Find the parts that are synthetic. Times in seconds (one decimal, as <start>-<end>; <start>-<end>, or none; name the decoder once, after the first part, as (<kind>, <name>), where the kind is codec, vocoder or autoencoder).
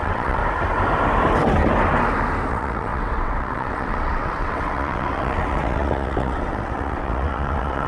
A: 0.0-0.4 (vocoder, WaveNeXt); 2.5-7.9